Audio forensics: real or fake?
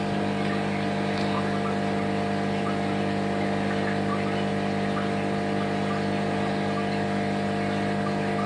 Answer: real